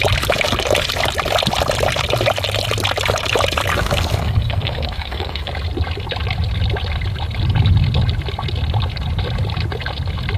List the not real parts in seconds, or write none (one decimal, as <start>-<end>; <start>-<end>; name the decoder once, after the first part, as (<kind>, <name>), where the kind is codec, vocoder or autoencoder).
3.7-5.5 (codec, SNAC)